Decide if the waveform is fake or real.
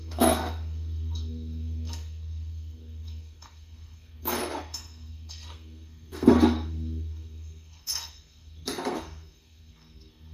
fake